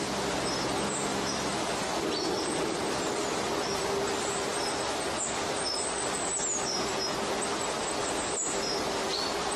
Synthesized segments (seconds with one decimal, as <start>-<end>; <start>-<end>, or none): none